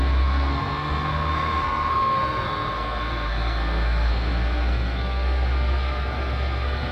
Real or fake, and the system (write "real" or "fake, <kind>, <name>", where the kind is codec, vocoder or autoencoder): fake, codec, SNAC